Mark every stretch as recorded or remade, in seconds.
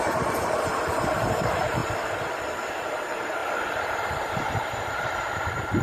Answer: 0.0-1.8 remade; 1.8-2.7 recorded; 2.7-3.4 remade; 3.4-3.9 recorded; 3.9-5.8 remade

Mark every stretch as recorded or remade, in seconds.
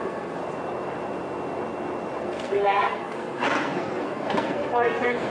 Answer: 0.0-0.4 remade; 0.4-2.2 recorded; 2.2-5.3 remade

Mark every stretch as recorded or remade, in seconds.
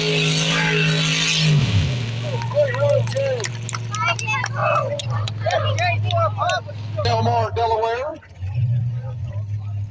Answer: 0.0-4.6 recorded; 4.6-5.3 remade; 5.3-8.1 recorded; 8.1-9.3 remade; 9.3-9.9 recorded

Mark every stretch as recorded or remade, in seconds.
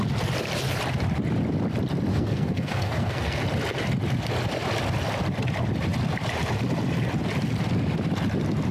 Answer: 0.0-2.1 recorded; 2.1-3.4 remade; 3.4-8.7 recorded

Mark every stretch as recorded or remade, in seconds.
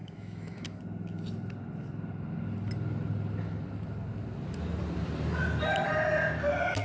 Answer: 0.0-0.8 remade; 0.8-6.8 recorded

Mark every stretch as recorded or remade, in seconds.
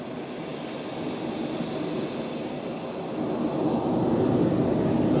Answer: 0.0-5.2 recorded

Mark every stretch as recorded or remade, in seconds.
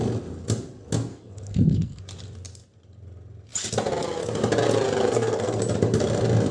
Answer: 0.0-1.1 recorded; 1.1-2.0 remade; 2.0-5.0 recorded; 5.0-5.6 remade; 5.6-6.5 recorded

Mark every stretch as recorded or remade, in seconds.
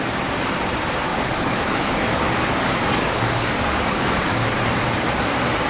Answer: 0.0-1.1 recorded; 1.1-4.5 remade; 4.5-5.7 recorded